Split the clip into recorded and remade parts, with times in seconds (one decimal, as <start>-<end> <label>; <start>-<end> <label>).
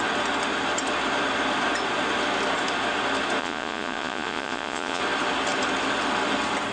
0.0-3.4 recorded; 3.4-5.0 remade; 5.0-6.7 recorded